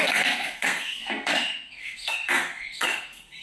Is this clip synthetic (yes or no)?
yes